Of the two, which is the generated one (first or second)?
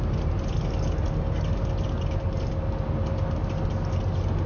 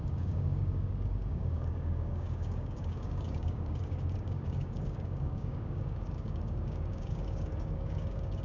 second